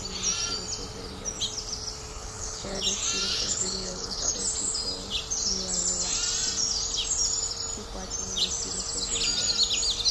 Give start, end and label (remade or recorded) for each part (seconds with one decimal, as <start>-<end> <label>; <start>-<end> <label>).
0.0-2.1 recorded; 2.1-2.8 remade; 2.8-3.3 recorded; 3.3-4.3 remade; 4.3-10.1 recorded